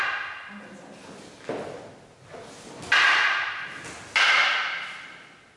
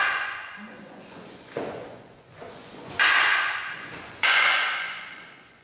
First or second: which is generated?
second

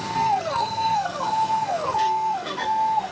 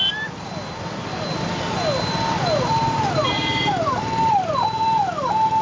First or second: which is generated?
first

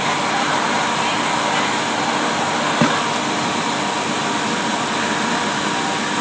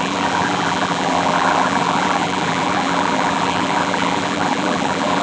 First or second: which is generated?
second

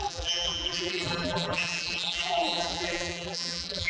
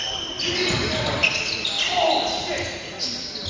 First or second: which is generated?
first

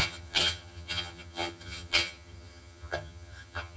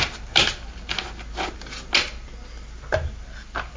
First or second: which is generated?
first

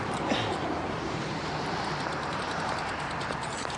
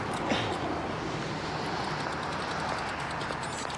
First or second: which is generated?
first